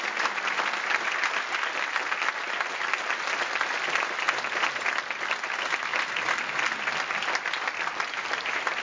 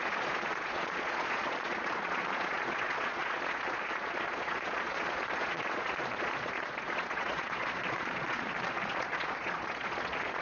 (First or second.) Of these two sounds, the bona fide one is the first